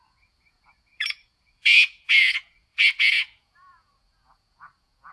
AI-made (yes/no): yes